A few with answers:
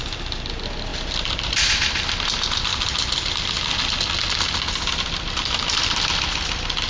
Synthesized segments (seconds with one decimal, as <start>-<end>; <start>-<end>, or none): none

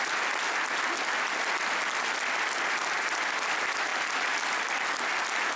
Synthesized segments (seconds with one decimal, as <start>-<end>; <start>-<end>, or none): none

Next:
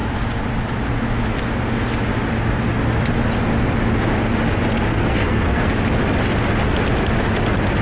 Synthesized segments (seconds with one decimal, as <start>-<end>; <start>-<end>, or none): 5.0-5.7

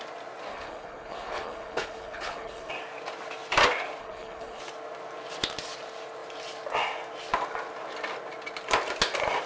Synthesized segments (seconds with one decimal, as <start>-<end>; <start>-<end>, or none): 0.5-2.7; 4.0-4.6

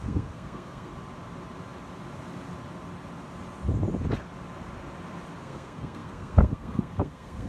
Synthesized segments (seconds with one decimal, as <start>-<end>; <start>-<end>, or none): 0.0-0.9; 5.4-7.5

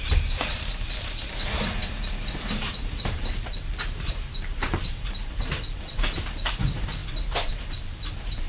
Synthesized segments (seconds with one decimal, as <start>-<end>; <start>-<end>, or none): 0.0-7.0; 7.5-8.5

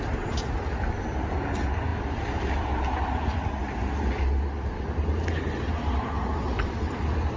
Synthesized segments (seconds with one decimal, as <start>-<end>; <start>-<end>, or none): none

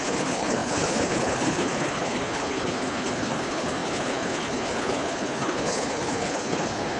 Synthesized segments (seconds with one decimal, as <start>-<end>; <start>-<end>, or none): 0.0-7.0